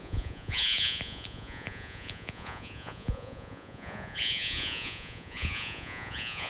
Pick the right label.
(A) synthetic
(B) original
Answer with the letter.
A